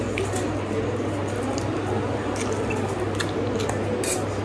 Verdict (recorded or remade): recorded